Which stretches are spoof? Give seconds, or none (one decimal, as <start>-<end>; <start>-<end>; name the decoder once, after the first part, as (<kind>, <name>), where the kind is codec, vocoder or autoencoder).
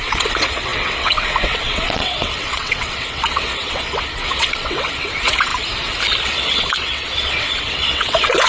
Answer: 0.0-5.5 (vocoder, WaveNeXt); 6.2-8.5